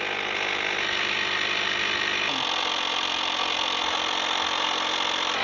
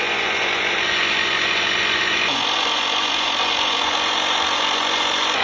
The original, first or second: first